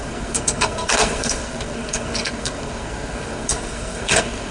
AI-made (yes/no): yes